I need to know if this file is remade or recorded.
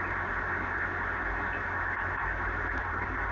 recorded